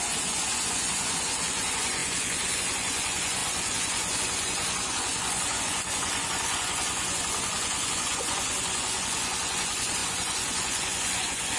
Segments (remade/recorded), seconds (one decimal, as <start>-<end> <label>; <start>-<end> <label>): 0.0-11.6 remade